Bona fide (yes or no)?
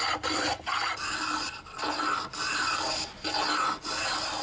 yes